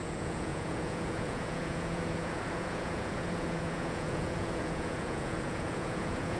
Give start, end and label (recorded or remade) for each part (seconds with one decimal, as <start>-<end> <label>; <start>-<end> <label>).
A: 0.0-6.4 remade